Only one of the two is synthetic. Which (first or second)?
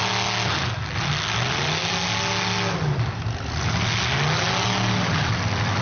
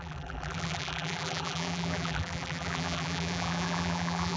second